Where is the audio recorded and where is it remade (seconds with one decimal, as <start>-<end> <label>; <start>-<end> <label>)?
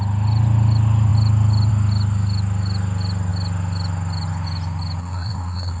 0.0-5.0 recorded; 5.0-5.8 remade